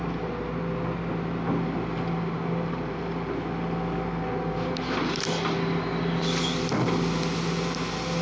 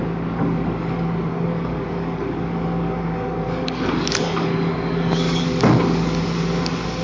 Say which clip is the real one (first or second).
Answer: first